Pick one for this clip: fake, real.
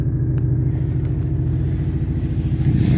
real